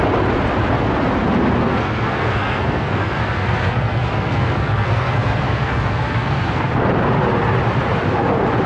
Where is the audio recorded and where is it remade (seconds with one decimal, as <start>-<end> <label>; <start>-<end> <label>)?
0.0-1.6 recorded; 1.6-6.7 remade; 6.7-8.7 recorded